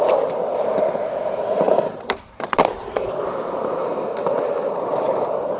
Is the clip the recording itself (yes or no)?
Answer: no